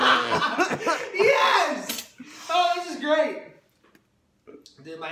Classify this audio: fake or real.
real